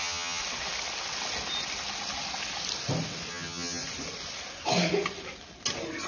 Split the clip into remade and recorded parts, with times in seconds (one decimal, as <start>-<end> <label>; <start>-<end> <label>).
0.0-0.4 remade; 0.4-3.3 recorded; 3.3-3.8 remade; 3.8-6.1 recorded